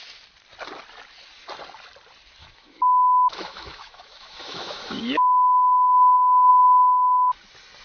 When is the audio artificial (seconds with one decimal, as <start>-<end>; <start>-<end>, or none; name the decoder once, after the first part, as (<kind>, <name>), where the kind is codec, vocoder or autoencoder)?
2.4-5.0 (autoencoder, DAC-VAE)